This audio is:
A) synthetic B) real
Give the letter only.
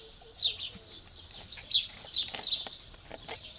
B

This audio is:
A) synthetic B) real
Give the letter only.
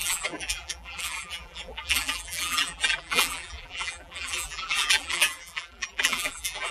A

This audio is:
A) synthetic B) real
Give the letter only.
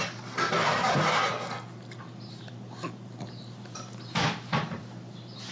A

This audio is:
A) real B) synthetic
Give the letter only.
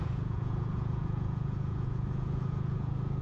B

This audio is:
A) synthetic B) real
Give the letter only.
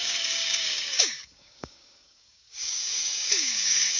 A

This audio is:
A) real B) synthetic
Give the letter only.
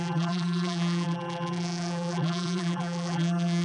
B